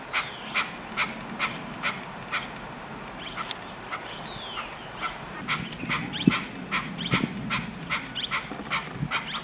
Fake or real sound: real